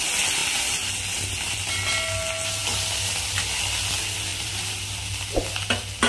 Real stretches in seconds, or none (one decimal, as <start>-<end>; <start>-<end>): 0.0-0.4; 1.6-4.3; 5.0-6.1

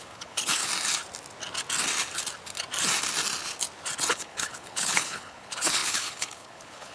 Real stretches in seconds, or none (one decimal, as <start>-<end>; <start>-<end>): 0.7-4.1

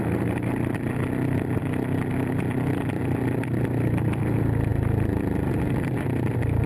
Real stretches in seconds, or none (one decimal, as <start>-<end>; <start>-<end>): 0.0-6.7

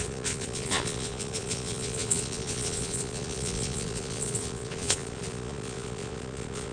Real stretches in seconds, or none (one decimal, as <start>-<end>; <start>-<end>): none